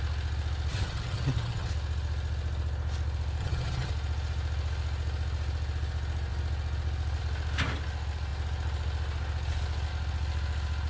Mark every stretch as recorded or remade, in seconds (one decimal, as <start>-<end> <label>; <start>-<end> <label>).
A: 0.0-0.7 recorded; 0.7-1.7 remade; 1.7-3.4 recorded; 3.4-3.9 remade; 3.9-10.9 recorded